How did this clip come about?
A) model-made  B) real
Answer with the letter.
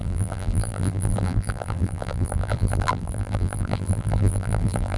A